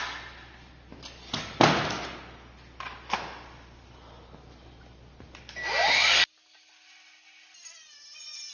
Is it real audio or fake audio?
real